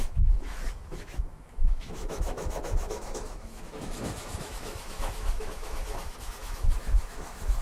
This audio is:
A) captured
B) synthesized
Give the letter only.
B